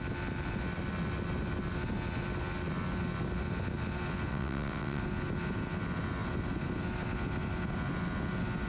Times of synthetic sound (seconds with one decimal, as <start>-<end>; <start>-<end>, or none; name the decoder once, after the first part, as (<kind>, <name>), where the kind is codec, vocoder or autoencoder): 4.3-5.0 (vocoder, WaveNeXt)